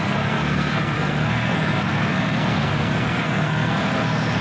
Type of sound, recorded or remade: remade